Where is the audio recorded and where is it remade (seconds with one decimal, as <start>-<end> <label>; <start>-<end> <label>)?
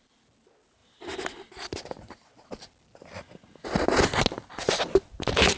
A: 0.0-5.6 recorded